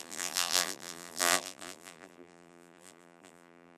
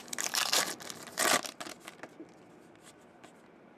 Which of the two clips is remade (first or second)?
first